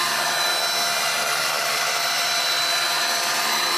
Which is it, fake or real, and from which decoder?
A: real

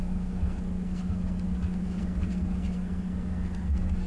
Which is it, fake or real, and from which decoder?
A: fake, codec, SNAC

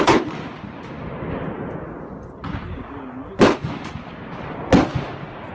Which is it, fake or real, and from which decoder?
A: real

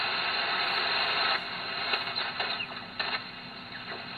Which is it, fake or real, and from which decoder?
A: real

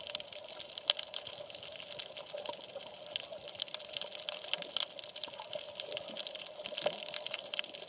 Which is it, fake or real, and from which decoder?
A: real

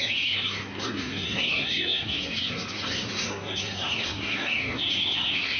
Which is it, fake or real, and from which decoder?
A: fake, codec, SNAC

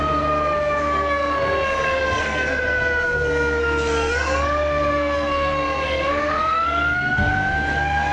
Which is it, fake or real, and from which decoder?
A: fake, codec, SNAC